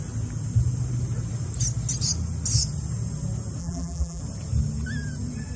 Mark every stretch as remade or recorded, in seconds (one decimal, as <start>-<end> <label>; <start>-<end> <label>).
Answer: 0.0-3.6 recorded; 3.6-4.2 remade; 4.2-5.6 recorded